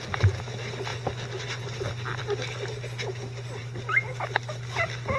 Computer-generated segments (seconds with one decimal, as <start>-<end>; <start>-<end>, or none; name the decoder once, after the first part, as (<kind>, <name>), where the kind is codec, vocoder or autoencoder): none